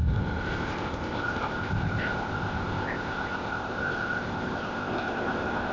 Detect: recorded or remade remade